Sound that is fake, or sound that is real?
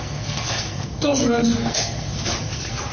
fake